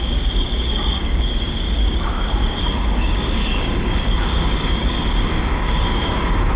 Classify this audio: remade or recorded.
remade